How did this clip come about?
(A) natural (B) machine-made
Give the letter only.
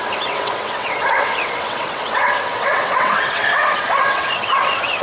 B